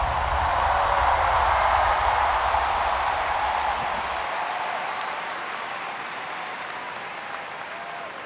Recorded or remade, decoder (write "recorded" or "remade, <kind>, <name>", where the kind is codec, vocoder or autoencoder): remade, vocoder, BigVGAN v2